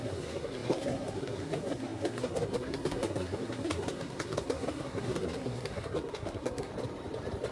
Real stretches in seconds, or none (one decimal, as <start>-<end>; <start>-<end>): 6.7-7.5